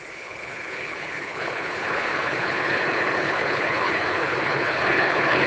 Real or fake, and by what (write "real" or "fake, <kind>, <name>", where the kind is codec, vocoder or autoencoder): fake, codec, HILCodec